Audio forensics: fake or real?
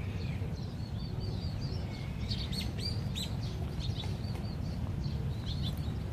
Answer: real